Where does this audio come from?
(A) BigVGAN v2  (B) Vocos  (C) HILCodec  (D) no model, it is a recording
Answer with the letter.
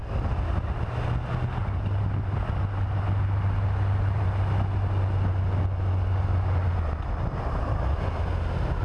D